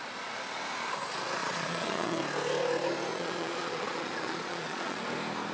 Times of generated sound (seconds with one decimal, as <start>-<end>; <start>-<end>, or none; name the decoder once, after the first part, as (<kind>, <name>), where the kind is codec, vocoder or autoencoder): 1.4-2.2 (vocoder, Vocos); 3.1-5.0